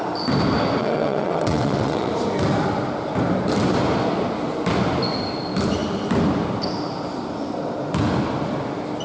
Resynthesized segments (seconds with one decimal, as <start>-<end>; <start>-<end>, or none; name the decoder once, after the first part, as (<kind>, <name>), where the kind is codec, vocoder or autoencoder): 0.8-2.1 (vocoder, WaveNeXt)